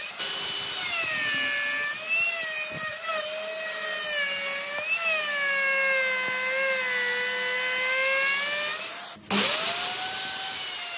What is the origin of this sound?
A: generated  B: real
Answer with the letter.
B